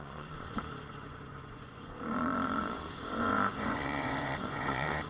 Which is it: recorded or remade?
remade